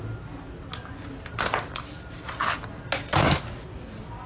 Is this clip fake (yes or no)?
no